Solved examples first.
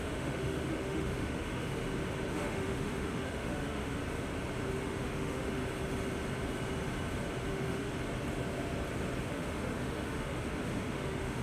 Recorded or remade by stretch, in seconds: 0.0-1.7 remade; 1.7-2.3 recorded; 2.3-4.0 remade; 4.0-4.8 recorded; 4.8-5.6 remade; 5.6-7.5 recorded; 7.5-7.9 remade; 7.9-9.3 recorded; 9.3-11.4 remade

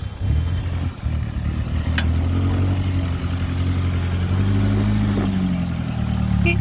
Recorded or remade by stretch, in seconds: 0.0-0.6 remade; 0.6-6.6 recorded

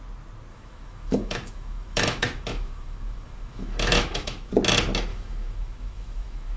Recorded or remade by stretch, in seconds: 0.0-0.5 recorded; 0.5-4.5 remade; 4.5-5.1 recorded; 5.1-6.6 remade

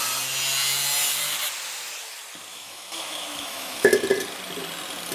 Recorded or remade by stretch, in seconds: 0.0-2.5 recorded; 2.5-3.9 remade; 3.9-5.1 recorded

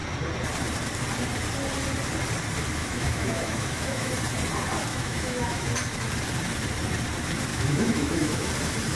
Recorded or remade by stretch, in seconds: 0.0-2.8 recorded; 2.8-4.1 remade; 4.1-4.9 recorded; 4.9-5.7 remade; 5.7-7.5 recorded; 7.5-8.5 remade; 8.5-9.0 recorded

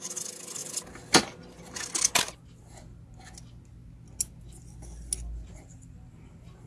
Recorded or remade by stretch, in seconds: 0.0-6.7 recorded

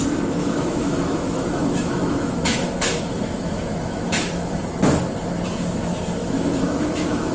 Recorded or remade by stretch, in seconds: 0.0-0.4 recorded; 0.4-4.6 remade; 4.6-6.2 recorded; 6.2-7.3 remade

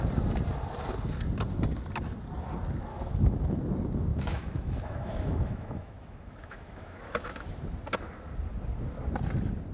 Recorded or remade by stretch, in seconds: 0.0-2.9 recorded; 2.9-3.6 remade; 3.6-4.1 recorded; 4.1-7.5 remade; 7.5-9.7 recorded